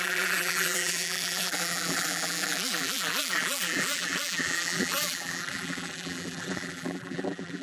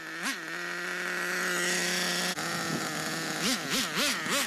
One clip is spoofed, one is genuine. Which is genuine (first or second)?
second